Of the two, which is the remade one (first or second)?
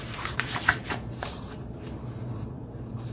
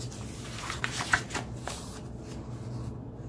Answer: first